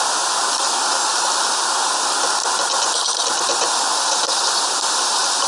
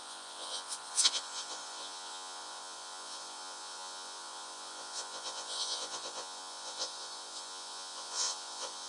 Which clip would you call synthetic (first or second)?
second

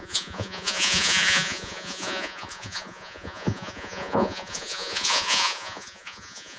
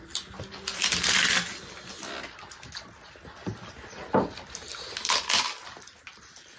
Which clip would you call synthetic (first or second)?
first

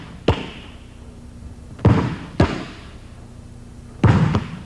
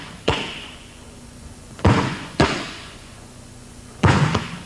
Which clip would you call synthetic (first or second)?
second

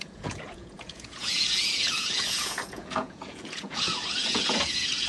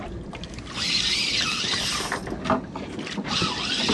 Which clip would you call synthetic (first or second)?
first